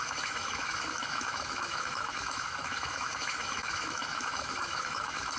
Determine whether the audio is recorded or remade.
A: remade